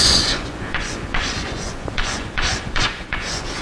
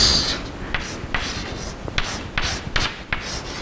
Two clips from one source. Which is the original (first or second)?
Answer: second